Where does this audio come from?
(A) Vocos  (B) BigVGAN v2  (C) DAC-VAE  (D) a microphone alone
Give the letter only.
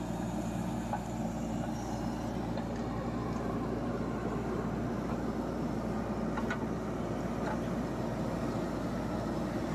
D